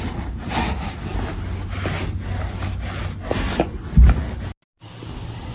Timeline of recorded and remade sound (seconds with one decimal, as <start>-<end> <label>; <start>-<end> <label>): 0.0-5.5 recorded